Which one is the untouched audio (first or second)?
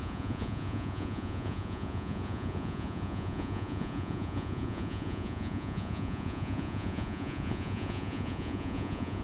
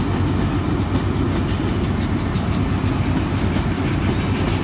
second